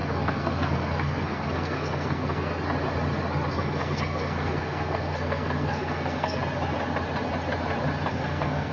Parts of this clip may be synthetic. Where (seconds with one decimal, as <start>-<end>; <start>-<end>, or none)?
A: 0.0-2.5; 3.5-6.4; 8.1-8.7